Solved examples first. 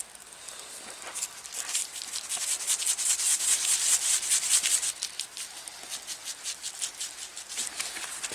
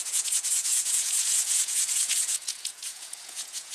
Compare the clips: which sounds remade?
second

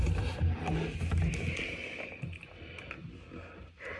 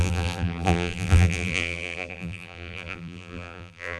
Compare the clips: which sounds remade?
second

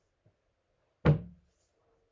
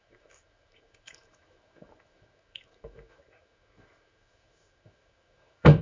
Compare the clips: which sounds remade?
second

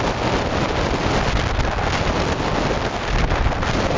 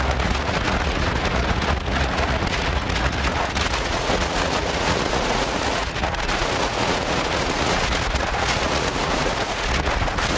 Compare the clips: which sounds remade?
second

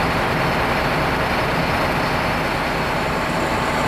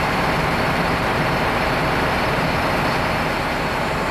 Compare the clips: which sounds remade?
second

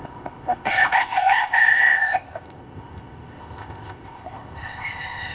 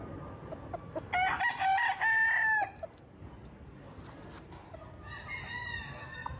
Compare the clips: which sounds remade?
first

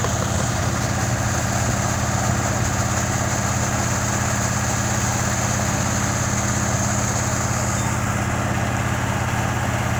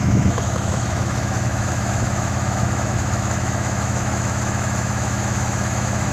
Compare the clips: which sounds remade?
second